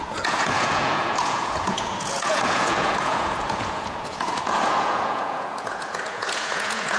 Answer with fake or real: fake